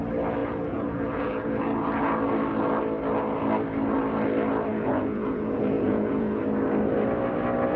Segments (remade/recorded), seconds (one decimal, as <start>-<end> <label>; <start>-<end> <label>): 0.0-0.4 recorded; 0.4-1.6 remade; 1.6-4.7 recorded; 4.7-6.4 remade; 6.4-7.8 recorded